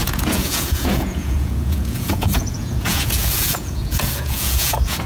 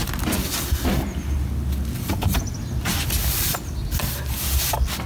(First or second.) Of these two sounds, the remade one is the first